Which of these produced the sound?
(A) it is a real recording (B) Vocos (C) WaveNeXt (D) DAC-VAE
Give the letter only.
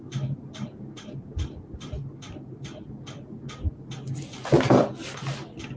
A